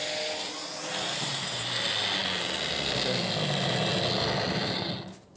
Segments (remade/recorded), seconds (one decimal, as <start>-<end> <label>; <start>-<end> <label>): 0.0-5.4 recorded